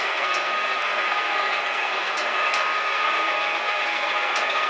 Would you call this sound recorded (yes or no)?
no